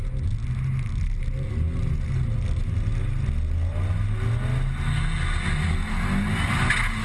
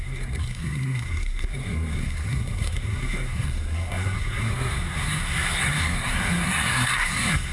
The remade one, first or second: second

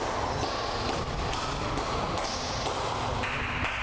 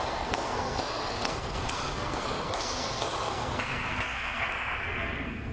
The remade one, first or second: second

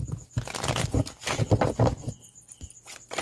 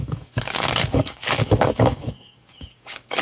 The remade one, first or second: second